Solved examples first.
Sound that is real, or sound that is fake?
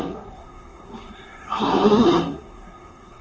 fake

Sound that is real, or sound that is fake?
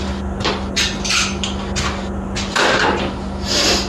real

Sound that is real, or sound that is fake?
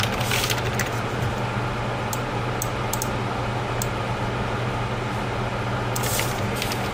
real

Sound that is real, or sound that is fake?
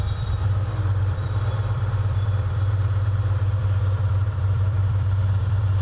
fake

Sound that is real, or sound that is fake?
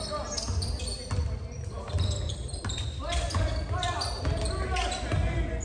real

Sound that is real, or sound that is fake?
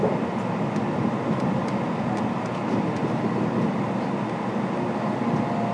real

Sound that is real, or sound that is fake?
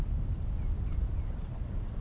real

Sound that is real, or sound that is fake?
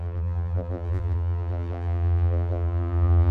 fake